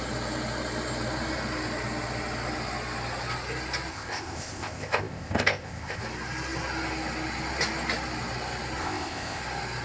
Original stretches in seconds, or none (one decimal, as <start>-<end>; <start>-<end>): 0.0-3.9; 6.0-8.8; 9.4-9.8